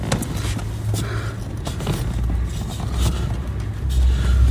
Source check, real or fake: real